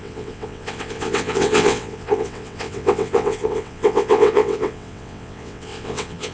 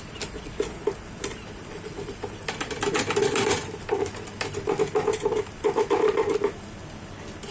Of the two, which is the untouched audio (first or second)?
second